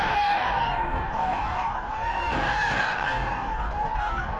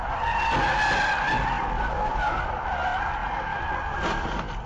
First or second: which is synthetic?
first